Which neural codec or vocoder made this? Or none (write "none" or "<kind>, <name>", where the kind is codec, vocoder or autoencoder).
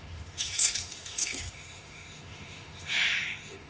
autoencoder, DAC-VAE